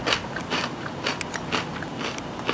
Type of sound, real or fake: real